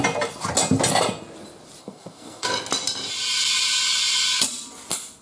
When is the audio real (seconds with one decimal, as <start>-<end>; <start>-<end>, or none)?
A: 0.0-1.8; 2.5-5.2